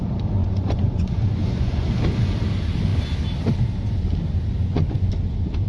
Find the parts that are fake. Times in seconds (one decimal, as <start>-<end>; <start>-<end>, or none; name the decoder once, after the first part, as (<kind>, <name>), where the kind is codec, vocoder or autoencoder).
0.4-1.9 (vocoder, Vocos); 4.6-5.1